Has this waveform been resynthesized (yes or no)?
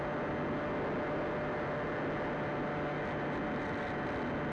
no